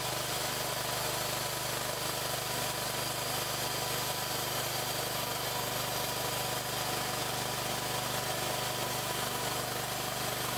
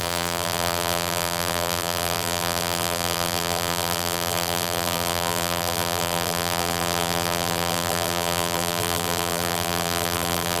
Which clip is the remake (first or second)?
second